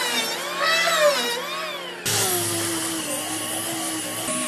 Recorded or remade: recorded